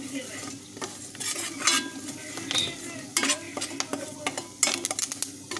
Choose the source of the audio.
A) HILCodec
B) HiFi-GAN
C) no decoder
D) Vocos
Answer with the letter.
C